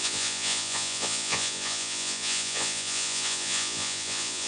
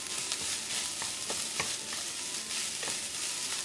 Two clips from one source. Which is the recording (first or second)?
second